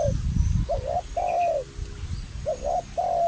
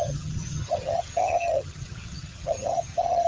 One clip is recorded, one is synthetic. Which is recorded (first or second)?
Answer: first